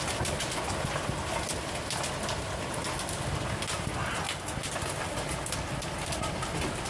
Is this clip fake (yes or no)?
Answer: no